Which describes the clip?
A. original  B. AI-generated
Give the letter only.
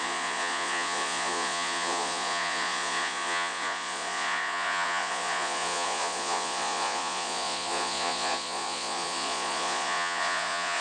B